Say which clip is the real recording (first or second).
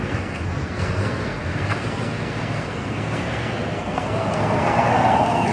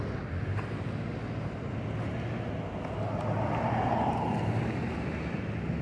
second